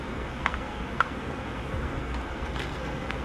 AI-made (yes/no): yes